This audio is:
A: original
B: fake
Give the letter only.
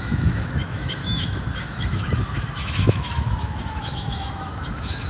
B